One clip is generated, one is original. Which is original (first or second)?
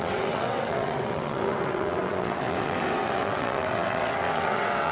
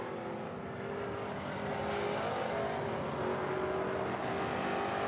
second